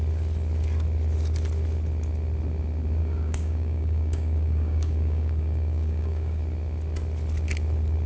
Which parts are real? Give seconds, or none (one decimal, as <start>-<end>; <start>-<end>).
0.0-3.0; 6.4-8.1